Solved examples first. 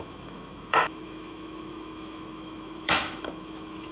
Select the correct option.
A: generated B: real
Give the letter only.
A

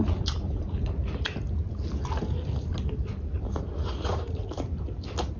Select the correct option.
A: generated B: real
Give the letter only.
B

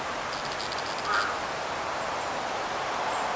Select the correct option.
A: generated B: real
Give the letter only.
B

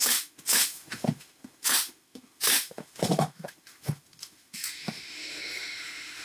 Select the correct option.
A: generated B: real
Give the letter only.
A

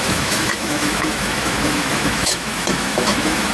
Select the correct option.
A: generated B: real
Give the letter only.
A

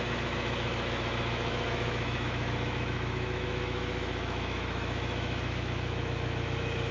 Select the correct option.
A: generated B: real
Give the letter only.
A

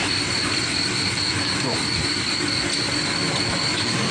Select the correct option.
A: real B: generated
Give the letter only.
A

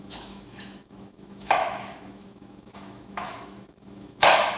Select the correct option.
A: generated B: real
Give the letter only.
A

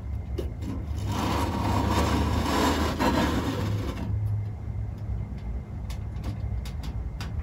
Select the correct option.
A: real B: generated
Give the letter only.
A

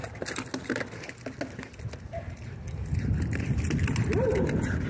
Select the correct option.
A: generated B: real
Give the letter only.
B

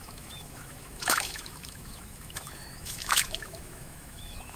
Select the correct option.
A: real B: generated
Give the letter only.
B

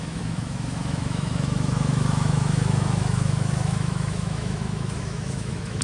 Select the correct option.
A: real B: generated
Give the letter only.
B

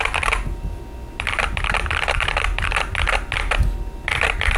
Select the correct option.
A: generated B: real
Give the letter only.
B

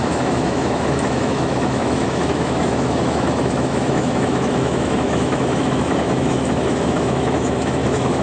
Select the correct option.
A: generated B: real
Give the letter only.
A